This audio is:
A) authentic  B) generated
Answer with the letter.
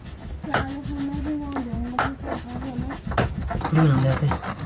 A